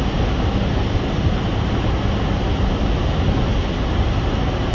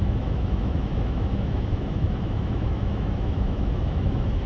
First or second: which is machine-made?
second